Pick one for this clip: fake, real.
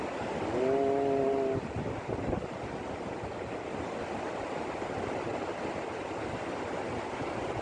real